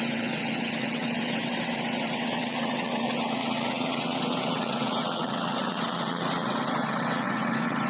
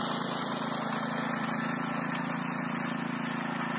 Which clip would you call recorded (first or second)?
second